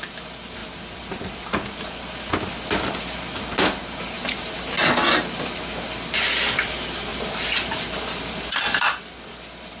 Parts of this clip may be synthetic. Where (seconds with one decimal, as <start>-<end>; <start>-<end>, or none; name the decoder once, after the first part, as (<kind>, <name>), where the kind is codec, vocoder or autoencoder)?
3.8-4.7 (vocoder, BigVGAN v2); 7.1-9.0

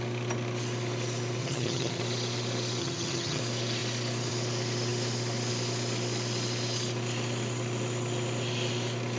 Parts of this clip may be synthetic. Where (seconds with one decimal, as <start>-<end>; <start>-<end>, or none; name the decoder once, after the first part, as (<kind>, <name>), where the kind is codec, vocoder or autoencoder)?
1.4-2.0 (vocoder, HiFi-GAN); 2.8-3.4

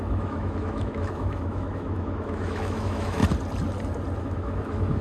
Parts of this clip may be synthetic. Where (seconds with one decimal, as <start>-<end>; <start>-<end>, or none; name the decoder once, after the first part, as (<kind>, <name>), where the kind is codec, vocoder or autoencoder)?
0.0-3.2 (autoencoder, DAC-VAE); 4.2-5.0

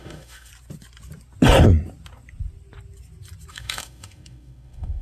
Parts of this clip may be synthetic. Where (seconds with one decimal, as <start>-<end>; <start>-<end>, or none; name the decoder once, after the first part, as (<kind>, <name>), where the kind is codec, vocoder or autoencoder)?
0.0-0.5 (autoencoder, DAC-VAE); 3.5-5.0

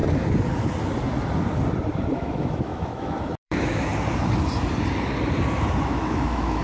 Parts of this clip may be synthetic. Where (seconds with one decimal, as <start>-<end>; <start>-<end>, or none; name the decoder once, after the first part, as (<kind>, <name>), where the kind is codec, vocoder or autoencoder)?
2.1-3.9 (autoencoder, DAC-VAE); 5.8-6.6

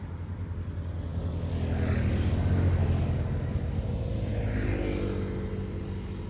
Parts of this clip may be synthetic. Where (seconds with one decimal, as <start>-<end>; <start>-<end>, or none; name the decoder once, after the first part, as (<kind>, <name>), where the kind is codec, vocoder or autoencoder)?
1.1-3.9 (codec, DAC)

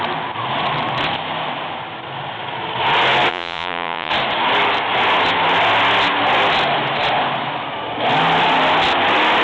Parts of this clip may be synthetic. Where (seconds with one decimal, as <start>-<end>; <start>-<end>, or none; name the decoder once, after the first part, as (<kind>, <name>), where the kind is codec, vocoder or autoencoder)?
3.3-4.1 (vocoder, Vocos)

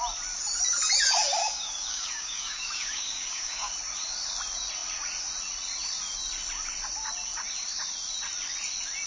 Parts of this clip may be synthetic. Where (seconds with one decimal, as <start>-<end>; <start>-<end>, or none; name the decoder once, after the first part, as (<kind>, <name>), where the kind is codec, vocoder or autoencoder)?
1.4-3.7 (codec, DAC)